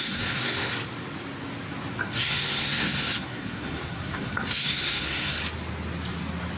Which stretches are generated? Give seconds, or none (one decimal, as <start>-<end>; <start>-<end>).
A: 0.0-0.7; 2.0-5.4